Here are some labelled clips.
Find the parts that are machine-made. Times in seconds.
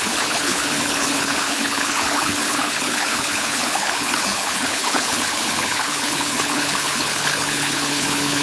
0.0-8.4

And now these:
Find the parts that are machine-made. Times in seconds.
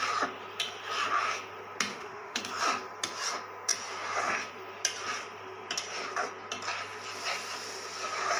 1.9-2.4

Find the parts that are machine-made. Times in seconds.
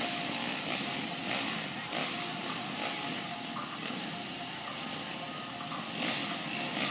none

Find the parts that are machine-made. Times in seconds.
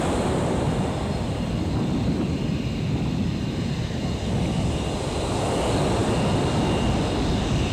none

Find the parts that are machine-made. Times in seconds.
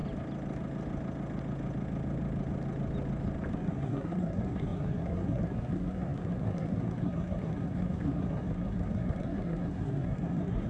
3.5-10.7